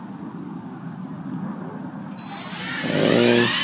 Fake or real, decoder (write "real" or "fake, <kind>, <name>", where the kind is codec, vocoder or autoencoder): real